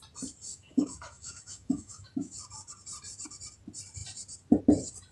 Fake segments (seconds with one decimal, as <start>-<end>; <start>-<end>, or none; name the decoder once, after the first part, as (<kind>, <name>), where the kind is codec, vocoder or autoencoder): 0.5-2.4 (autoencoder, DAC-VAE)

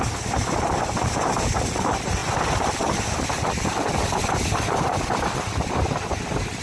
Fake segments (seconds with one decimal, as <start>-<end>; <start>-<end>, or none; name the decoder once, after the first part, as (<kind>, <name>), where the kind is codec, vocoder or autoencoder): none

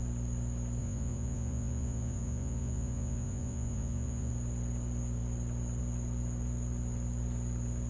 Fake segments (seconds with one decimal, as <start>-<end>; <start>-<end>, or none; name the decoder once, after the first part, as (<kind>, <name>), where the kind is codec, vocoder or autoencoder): 0.8-4.3 (vocoder, Vocos)

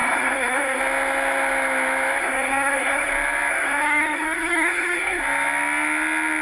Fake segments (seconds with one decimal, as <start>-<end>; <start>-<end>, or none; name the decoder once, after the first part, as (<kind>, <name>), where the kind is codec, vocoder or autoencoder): 0.0-0.8 (codec, SNAC); 2.2-3.1; 3.5-5.2

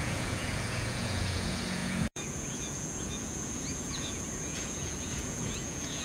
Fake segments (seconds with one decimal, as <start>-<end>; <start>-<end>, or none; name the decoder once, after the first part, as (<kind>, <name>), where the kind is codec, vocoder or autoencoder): 0.0-6.0 (vocoder, Vocos)

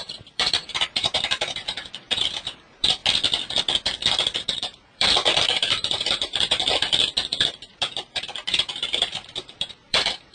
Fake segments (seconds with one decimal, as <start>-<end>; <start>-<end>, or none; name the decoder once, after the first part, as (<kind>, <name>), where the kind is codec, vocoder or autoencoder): 0.0-3.0 (vocoder, BigVGAN v2); 4.4-6.6; 7.7-10.3

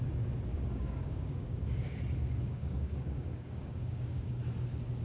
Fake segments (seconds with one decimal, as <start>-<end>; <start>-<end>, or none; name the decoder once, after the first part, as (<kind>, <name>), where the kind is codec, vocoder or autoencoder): 0.5-1.9 (codec, DAC); 2.4-4.4